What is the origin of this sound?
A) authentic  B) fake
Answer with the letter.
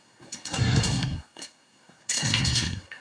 B